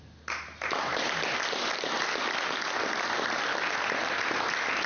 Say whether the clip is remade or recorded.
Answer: recorded